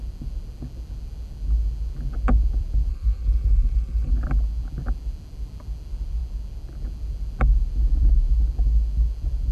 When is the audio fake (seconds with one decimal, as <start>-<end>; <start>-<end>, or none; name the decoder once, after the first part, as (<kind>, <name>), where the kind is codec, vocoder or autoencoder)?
2.9-4.1 (codec, SNAC)